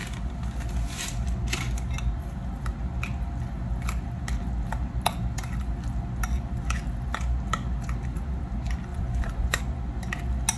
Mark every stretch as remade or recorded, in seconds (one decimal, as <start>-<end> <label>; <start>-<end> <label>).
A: 0.0-8.9 recorded; 8.9-9.6 remade; 9.6-10.6 recorded